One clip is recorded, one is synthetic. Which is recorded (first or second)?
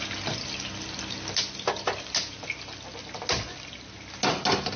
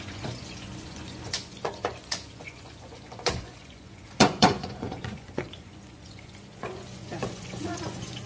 first